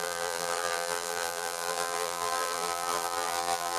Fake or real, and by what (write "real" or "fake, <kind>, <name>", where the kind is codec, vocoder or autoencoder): fake, vocoder, BigVGAN v2